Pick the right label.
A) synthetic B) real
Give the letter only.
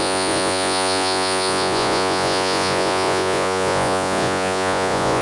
A